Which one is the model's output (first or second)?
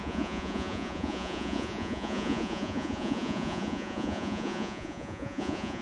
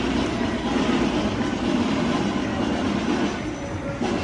first